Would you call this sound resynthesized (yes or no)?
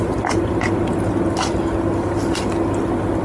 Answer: no